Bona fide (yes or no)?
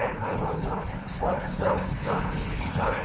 no